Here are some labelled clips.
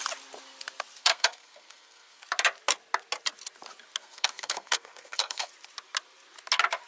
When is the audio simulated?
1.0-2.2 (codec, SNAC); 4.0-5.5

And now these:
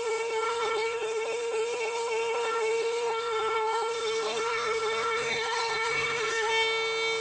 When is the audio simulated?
0.0-6.5 (codec, SNAC)

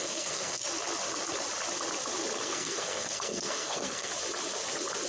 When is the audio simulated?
0.0-0.6 (codec, SNAC); 2.4-4.1

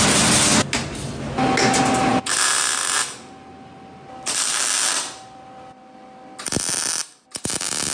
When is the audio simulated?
none

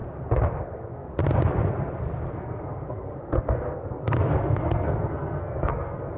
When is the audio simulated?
0.6-1.1 (codec, SNAC); 2.3-6.2